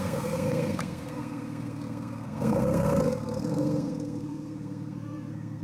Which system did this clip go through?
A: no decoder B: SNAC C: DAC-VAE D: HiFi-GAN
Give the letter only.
B